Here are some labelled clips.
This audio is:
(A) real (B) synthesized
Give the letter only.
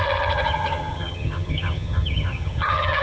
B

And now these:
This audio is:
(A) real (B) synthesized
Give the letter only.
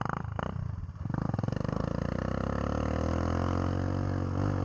A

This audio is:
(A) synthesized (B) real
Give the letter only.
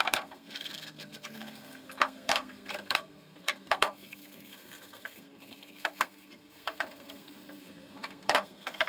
A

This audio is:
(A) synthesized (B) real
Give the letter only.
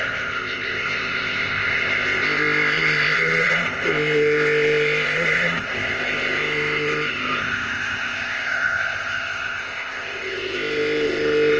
A